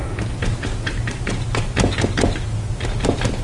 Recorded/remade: remade